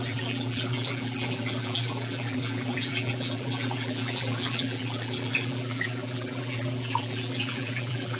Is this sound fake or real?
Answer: fake